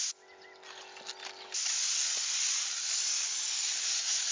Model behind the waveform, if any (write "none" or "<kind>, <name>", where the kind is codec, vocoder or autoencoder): none